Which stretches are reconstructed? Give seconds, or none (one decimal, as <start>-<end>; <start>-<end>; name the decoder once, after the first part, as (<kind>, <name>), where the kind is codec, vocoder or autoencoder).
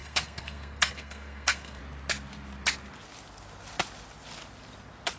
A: 0.0-1.8 (codec, SNAC)